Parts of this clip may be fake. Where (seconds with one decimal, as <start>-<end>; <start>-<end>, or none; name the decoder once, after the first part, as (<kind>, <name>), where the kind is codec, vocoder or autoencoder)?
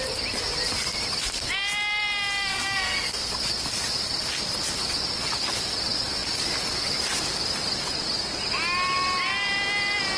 2.5-3.3 (codec, SNAC)